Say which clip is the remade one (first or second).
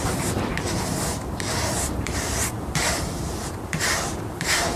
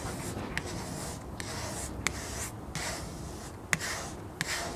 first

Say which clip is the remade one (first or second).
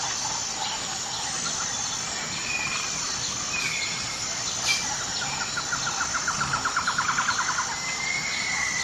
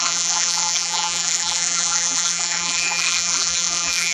second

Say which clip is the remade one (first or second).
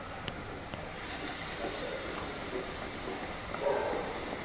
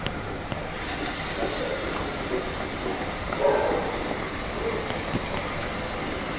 first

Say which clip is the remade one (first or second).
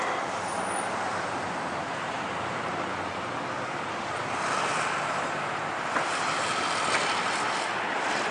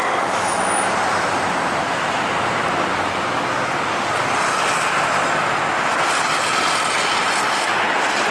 first